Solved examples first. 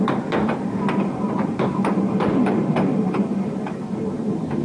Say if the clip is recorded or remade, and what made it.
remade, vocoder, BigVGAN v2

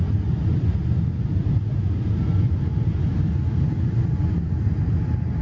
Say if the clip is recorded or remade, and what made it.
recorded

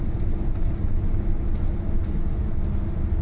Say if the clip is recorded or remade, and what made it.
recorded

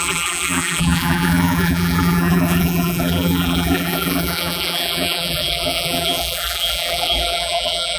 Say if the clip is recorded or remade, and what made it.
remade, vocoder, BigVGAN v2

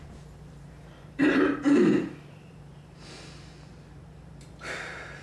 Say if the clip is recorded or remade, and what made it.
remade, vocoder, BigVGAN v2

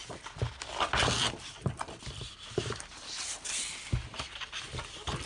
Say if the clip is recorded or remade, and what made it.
remade, vocoder, BigVGAN v2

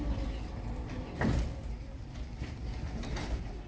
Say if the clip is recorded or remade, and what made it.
recorded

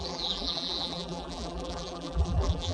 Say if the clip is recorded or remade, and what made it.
remade, vocoder, BigVGAN v2